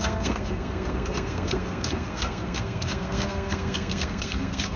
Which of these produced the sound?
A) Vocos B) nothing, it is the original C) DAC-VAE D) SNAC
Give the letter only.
D